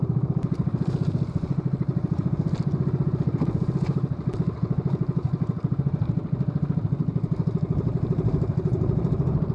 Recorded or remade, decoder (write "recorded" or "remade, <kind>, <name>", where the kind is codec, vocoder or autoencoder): recorded